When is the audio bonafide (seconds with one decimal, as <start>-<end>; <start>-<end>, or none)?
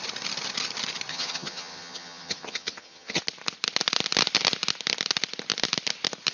0.0-1.1; 3.2-6.3